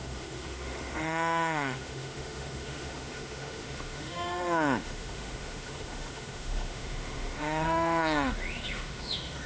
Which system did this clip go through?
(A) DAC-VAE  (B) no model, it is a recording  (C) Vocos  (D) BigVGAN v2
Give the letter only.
A